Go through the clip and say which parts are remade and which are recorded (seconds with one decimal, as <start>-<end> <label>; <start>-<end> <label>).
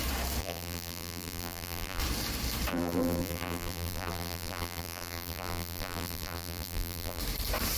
0.0-0.4 recorded; 0.4-2.0 remade; 2.0-2.7 recorded; 2.7-7.2 remade; 7.2-7.8 recorded